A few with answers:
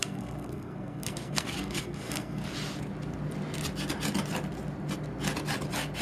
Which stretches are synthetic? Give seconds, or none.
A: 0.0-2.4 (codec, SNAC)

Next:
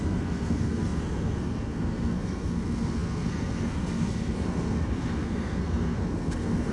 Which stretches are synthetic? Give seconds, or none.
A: 0.0-6.7 (codec, SNAC)